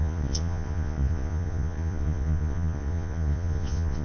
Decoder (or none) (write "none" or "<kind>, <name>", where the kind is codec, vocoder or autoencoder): vocoder, Vocos